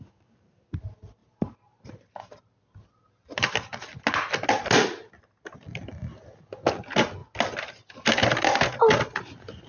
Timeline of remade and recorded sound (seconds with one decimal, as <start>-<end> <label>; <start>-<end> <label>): 0.0-9.7 recorded